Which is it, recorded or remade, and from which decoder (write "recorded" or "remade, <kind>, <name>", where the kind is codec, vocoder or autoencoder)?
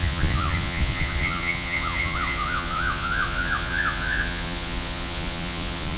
remade, vocoder, Vocos